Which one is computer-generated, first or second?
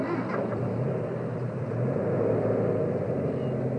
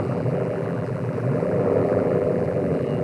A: second